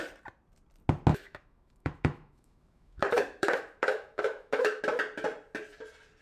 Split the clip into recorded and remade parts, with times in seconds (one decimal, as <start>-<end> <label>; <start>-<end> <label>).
0.0-1.1 recorded; 1.1-4.8 remade; 4.8-6.2 recorded